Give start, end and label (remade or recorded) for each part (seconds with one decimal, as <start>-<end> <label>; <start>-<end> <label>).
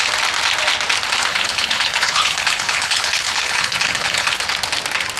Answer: 0.0-1.3 recorded; 1.3-4.4 remade; 4.4-5.2 recorded